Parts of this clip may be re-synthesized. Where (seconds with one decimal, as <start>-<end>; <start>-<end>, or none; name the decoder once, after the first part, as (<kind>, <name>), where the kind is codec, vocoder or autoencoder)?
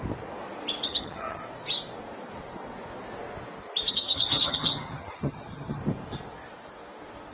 0.9-1.4 (vocoder, HiFi-GAN); 3.9-5.8